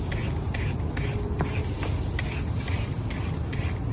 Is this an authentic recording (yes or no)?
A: yes